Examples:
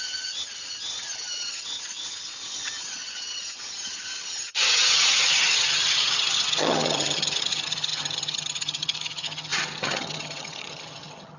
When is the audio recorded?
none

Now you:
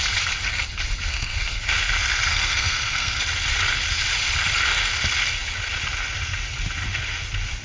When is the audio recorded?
0.0-1.1; 1.6-2.3; 3.2-7.6

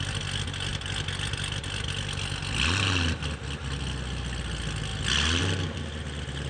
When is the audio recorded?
0.0-6.5

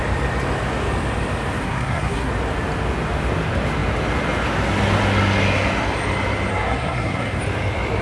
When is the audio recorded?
0.0-1.6; 2.3-6.5; 7.4-8.0

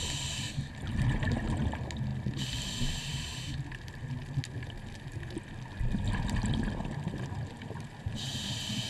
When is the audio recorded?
0.0-8.9

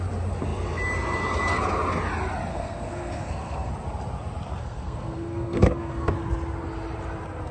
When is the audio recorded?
0.0-2.5; 3.7-4.6; 6.1-7.5

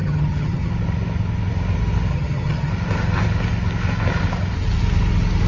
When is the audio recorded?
0.7-2.1; 2.7-5.5